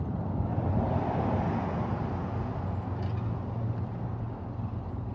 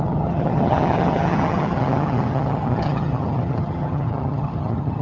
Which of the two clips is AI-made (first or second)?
second